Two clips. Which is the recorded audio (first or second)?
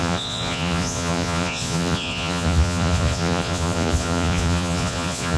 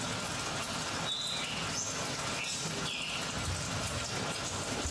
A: second